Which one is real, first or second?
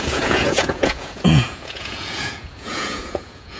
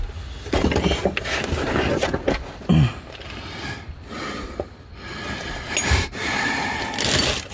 second